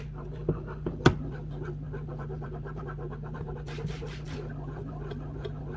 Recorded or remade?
recorded